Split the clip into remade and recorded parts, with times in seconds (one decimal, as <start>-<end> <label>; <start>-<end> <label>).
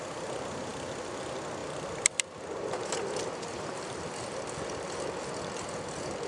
0.0-0.7 recorded; 0.7-1.2 remade; 1.2-1.6 recorded; 1.6-5.1 remade; 5.1-6.3 recorded